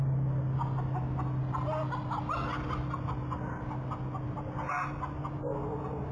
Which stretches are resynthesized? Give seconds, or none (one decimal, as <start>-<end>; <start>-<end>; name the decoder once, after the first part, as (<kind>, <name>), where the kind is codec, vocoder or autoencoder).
none